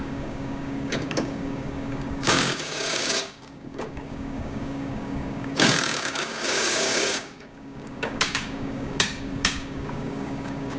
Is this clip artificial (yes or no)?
yes